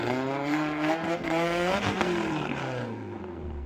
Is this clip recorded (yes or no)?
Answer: no